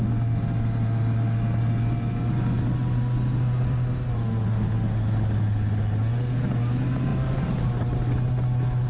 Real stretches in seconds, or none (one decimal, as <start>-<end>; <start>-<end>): 0.0-8.9